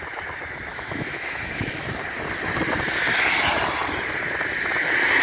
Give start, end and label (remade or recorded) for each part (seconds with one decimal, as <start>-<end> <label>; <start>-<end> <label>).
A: 0.0-0.7 recorded; 0.7-1.9 remade; 1.9-5.2 recorded